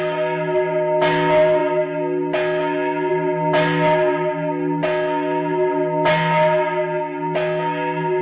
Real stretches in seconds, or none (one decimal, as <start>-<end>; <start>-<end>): 0.0-8.2